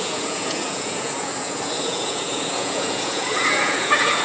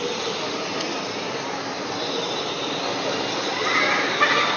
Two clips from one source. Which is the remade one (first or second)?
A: first